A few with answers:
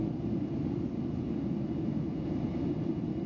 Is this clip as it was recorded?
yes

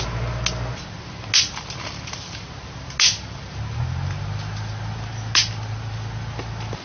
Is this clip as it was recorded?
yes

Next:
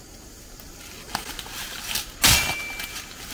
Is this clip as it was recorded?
yes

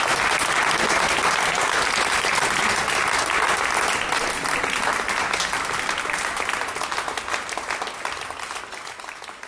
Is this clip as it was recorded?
yes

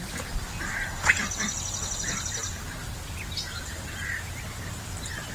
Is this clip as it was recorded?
yes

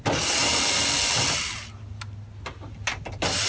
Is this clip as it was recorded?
yes